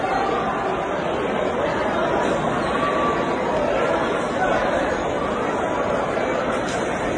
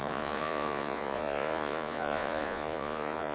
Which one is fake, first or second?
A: second